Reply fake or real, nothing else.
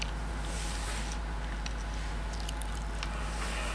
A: real